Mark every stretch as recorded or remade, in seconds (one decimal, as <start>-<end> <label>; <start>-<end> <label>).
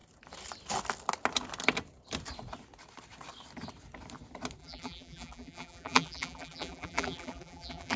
0.0-4.6 recorded; 4.6-8.0 remade